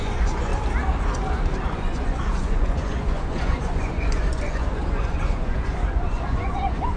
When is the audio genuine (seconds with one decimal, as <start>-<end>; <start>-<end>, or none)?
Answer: 0.5-1.7